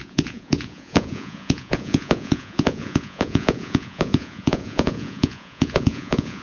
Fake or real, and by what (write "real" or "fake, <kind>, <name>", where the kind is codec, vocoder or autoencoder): fake, vocoder, Vocos